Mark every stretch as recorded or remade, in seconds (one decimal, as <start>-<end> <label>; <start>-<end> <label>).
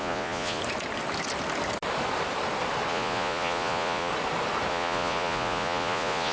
0.0-0.6 remade; 0.6-2.9 recorded; 2.9-4.1 remade; 4.1-4.7 recorded; 4.7-6.3 remade